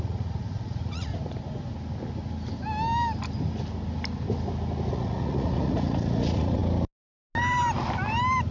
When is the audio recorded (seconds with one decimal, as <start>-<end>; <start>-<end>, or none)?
1.1-4.9; 6.6-8.5